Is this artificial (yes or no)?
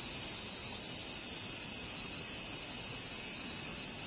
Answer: no